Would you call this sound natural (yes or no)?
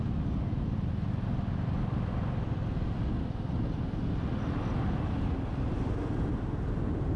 yes